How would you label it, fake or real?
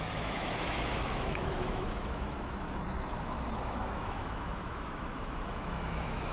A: fake